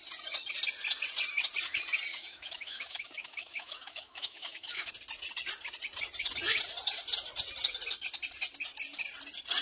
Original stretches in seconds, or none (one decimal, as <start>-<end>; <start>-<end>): 0.0-2.1; 4.9-9.6